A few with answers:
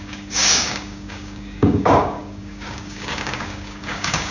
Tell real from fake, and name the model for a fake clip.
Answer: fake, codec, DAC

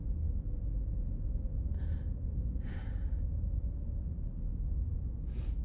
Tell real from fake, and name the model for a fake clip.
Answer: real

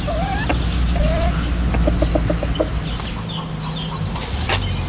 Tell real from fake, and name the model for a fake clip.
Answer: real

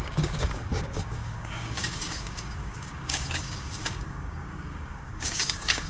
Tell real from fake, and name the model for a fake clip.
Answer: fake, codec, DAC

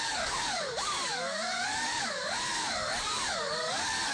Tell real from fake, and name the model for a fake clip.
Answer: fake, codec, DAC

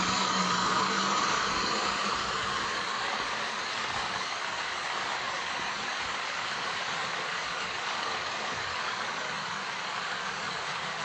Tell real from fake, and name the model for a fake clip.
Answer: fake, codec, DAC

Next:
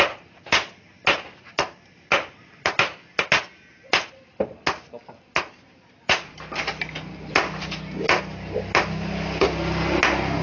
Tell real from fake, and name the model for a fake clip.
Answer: real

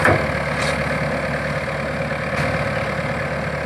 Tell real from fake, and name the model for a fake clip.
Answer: real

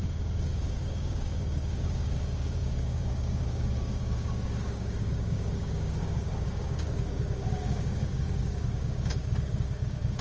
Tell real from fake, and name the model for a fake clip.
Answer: fake, codec, DAC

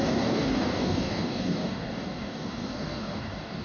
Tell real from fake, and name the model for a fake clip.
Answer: fake, codec, DAC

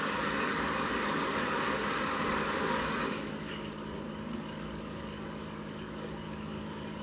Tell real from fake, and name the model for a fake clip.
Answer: fake, codec, DAC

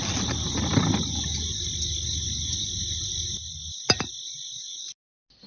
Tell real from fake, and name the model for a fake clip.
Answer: real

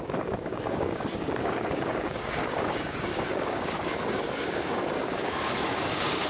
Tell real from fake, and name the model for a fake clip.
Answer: fake, codec, DAC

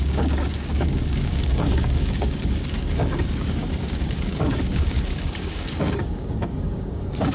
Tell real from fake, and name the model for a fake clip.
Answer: fake, codec, DAC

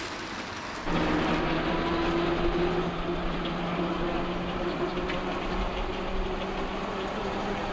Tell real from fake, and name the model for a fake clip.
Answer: real